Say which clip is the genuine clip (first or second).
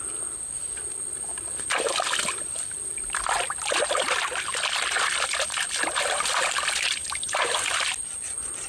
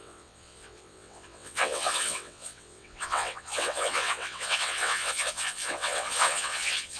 first